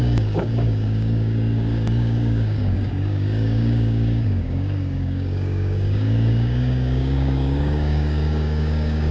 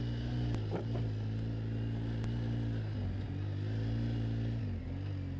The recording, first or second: second